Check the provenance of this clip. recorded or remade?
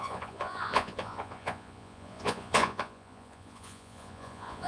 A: remade